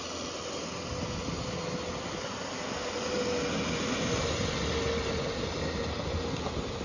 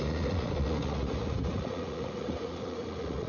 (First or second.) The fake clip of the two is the second